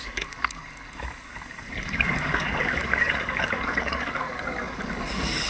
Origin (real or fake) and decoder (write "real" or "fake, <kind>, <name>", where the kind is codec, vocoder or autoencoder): fake, codec, DAC